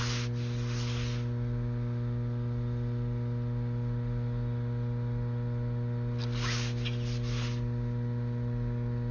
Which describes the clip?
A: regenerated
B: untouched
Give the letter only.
B